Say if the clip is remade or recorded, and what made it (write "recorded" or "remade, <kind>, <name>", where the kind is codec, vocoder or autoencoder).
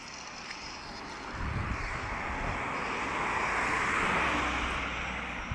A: recorded